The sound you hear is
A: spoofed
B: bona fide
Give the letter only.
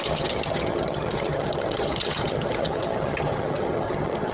A